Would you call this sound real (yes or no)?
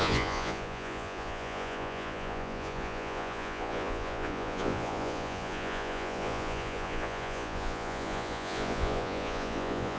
no